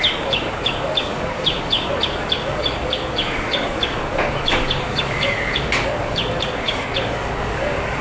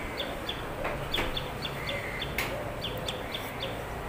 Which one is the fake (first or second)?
first